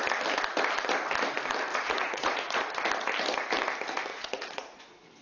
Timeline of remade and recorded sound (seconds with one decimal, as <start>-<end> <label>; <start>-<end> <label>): 0.0-1.7 recorded; 1.7-2.6 remade; 2.6-4.1 recorded; 4.1-4.8 remade; 4.8-5.2 recorded